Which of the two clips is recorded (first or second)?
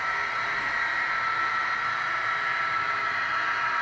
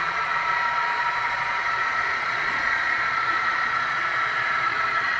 first